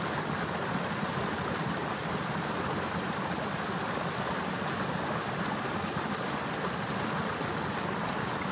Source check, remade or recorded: recorded